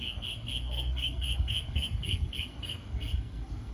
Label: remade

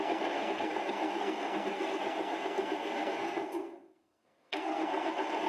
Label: remade